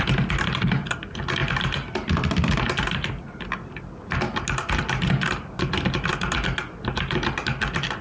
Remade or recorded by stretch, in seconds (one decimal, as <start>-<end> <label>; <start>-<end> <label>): 0.0-8.0 recorded

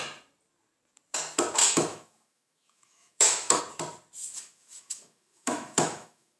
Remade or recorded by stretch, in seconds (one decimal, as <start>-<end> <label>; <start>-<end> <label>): 0.0-1.6 recorded; 1.6-3.6 remade; 3.6-4.2 recorded; 4.2-6.4 remade

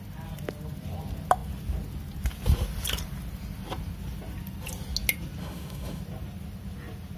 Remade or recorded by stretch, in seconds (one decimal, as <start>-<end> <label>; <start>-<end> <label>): 0.0-5.4 recorded; 5.4-6.0 remade; 6.0-7.2 recorded

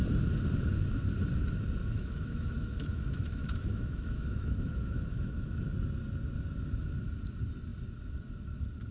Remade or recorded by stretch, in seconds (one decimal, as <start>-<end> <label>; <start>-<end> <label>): 0.0-1.8 recorded; 1.8-5.6 remade; 5.6-8.9 recorded

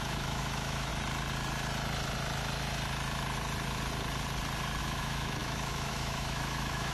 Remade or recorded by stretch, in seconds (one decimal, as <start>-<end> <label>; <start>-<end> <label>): 0.0-0.9 remade; 0.9-4.8 recorded; 4.8-6.9 remade

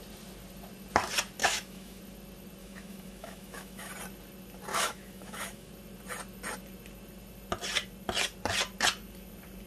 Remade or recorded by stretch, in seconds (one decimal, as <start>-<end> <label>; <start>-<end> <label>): 0.0-1.4 recorded; 1.4-2.0 remade; 2.0-2.6 recorded; 2.6-3.9 remade; 3.9-4.7 recorded; 4.7-5.7 remade; 5.7-9.7 recorded

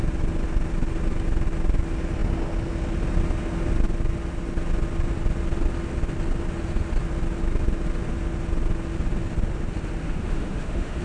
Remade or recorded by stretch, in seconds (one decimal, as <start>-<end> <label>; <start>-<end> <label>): 0.0-10.0 recorded; 10.0-11.0 remade

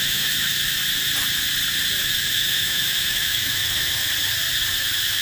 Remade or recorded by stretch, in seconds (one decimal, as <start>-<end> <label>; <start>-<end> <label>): 0.0-0.8 remade; 0.8-2.0 recorded; 2.0-4.0 remade; 4.0-4.7 recorded; 4.7-5.2 remade